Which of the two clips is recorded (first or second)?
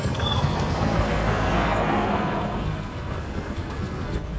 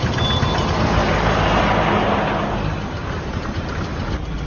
second